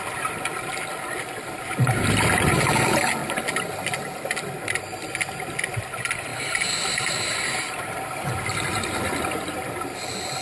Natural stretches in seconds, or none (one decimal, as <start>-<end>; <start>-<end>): 0.0-3.2; 3.8-6.3; 8.3-10.4